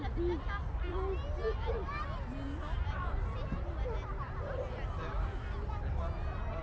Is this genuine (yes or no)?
yes